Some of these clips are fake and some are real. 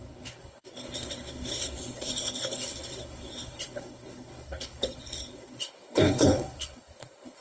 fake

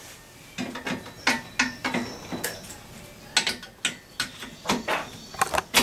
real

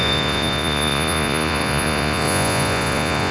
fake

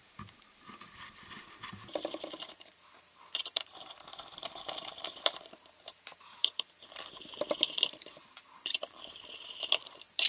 fake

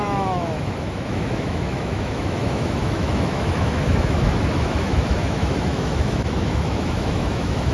fake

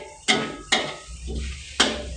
real